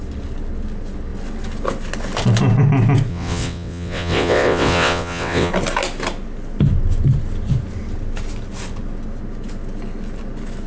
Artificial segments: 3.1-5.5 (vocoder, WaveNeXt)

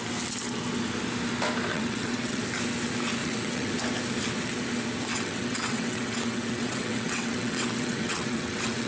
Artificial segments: 1.7-2.4 (vocoder, WaveNeXt); 3.2-3.7; 5.1-8.9